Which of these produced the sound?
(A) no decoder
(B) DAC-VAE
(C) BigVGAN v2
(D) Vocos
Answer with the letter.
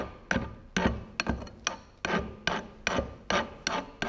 A